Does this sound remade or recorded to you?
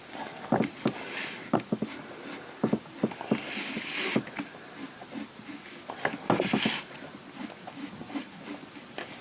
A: remade